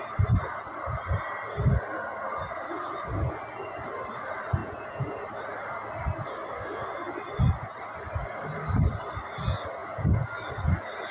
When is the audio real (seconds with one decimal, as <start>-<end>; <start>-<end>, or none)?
0.0-4.6; 5.2-9.8; 10.3-11.1